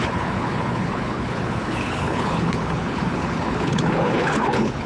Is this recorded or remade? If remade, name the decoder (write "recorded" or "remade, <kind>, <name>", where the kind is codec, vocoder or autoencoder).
remade, codec, HILCodec